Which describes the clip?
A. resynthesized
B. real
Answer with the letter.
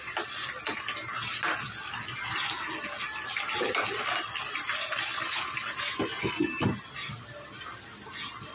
B